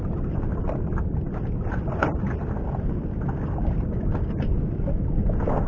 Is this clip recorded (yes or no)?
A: yes